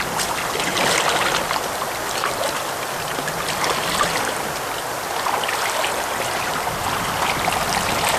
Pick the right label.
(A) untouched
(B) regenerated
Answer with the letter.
A